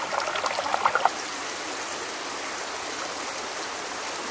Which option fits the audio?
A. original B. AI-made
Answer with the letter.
A